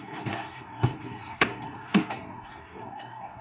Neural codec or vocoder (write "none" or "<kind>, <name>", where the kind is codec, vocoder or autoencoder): codec, SNAC